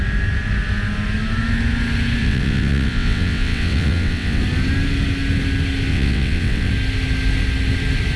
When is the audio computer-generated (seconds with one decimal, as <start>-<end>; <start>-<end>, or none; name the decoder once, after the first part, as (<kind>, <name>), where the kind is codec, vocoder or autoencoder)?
2.2-4.4 (vocoder, WaveNeXt); 5.9-6.7

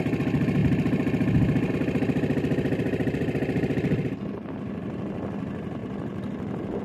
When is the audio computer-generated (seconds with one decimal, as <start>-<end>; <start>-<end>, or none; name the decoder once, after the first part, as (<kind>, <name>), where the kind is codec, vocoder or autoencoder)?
none

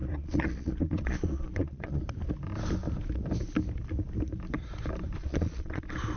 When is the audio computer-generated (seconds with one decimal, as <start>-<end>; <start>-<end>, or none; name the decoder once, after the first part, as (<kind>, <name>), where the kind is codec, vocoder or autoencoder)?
0.0-2.0 (vocoder, Vocos); 5.2-5.8

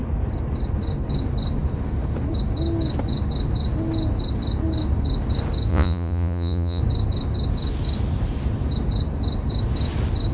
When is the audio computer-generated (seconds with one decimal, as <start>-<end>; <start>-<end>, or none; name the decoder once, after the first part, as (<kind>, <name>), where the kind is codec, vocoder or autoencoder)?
5.7-6.8 (vocoder, Vocos)

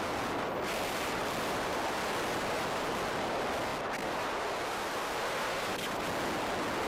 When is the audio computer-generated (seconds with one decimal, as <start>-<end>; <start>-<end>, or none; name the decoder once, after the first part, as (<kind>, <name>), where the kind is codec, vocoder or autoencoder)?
none

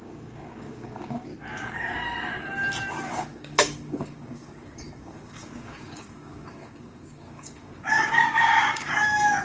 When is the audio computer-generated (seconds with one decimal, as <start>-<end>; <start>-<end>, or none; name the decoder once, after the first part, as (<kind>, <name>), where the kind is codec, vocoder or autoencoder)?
0.0-1.3 (codec, DAC); 2.9-9.4

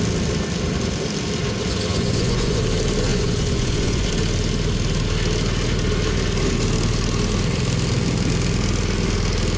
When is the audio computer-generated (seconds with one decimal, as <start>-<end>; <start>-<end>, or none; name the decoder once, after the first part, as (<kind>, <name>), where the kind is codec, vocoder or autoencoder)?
1.9-2.6 (vocoder, Vocos); 3.1-4.1

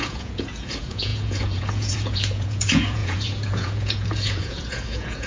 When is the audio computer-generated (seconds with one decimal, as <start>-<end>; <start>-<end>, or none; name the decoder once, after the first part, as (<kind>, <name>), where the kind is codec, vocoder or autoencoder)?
0.0-5.3 (vocoder, Vocos)